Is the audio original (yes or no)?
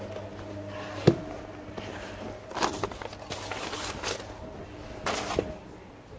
yes